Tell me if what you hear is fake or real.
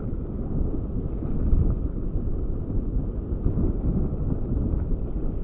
real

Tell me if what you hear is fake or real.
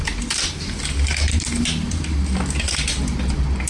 real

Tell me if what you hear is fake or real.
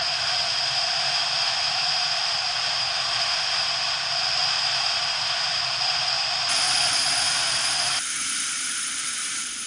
real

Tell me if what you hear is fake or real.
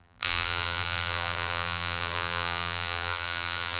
fake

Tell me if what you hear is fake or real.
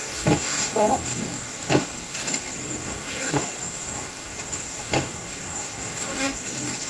fake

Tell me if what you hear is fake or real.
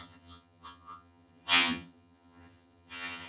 fake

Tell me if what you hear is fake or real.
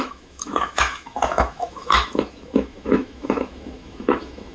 fake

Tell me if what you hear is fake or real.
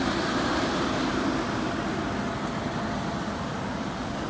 real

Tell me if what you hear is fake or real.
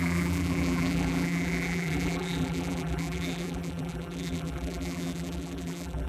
fake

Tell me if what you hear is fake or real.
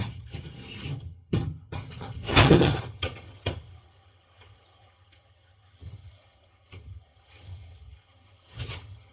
fake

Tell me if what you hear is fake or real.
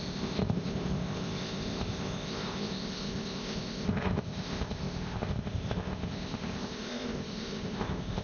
fake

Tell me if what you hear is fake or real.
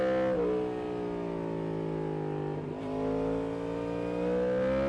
real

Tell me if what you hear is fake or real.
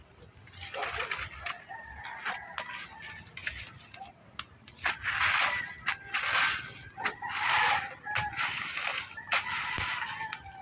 real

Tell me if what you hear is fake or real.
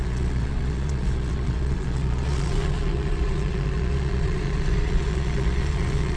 fake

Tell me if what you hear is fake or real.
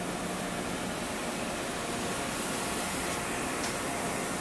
real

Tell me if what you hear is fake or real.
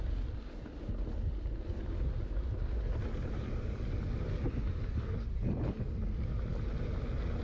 real